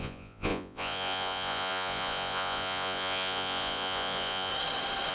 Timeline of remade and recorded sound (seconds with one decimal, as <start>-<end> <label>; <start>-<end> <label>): 0.0-4.5 remade; 4.5-5.1 recorded

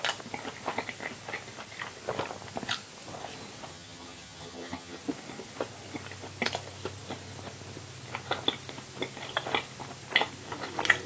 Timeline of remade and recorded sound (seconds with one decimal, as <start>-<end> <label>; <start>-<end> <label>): 0.0-3.7 recorded; 3.7-5.0 remade; 5.0-11.1 recorded

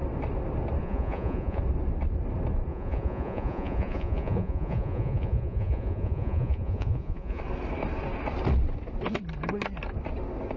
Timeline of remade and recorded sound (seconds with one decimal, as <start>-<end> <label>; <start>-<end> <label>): 0.0-0.8 recorded; 0.8-1.6 remade; 1.6-2.7 recorded; 2.7-7.4 remade; 7.4-10.6 recorded

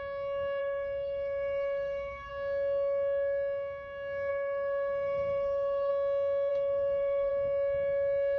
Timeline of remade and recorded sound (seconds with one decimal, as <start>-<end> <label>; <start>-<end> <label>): 0.0-0.6 recorded; 0.6-2.3 remade; 2.3-4.3 recorded; 4.3-5.9 remade; 5.9-6.5 recorded; 6.5-7.3 remade; 7.3-8.4 recorded

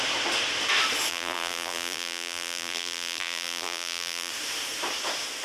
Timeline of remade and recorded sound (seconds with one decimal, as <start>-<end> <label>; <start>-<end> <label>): 0.0-1.1 recorded; 1.1-4.3 remade; 4.3-5.4 recorded

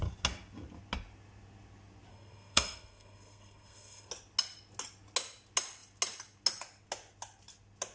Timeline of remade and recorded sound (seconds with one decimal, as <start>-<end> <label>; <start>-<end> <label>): 0.0-2.1 recorded; 2.1-4.1 remade; 4.1-7.9 recorded

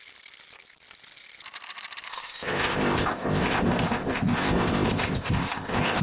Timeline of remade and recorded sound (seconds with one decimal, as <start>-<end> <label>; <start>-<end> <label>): 0.0-2.1 recorded; 2.1-6.0 remade

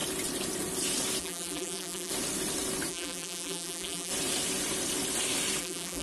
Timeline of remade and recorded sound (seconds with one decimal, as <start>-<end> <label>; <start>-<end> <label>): 0.0-1.2 recorded; 1.2-2.1 remade; 2.1-2.9 recorded; 2.9-4.1 remade; 4.1-5.6 recorded; 5.6-6.0 remade